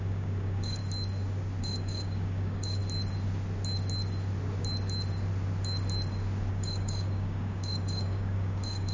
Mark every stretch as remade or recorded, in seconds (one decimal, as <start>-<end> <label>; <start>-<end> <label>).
0.0-0.8 remade; 0.8-1.6 recorded; 1.6-2.8 remade; 2.8-6.5 recorded; 6.5-8.9 remade